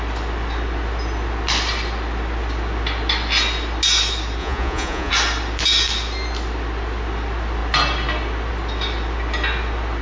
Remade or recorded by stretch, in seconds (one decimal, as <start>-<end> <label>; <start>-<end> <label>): 0.0-4.4 recorded; 4.4-5.1 remade; 5.1-10.0 recorded